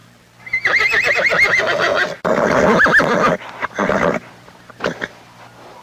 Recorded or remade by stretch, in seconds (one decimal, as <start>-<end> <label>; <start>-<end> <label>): 0.0-5.8 recorded